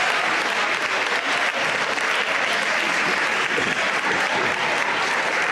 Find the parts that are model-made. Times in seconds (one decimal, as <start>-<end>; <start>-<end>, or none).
none